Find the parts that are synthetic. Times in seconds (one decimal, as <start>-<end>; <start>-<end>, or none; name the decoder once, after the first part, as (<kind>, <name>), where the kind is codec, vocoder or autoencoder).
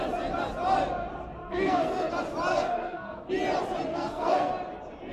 1.4-2.1 (codec, SNAC); 2.5-3.3; 3.9-4.5